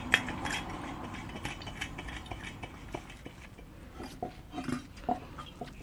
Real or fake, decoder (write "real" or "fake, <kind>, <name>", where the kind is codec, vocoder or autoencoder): real